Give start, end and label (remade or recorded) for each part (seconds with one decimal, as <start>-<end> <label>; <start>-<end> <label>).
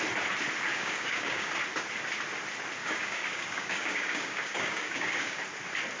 0.0-0.7 recorded; 0.7-1.5 remade; 1.5-2.8 recorded; 2.8-5.4 remade; 5.4-6.0 recorded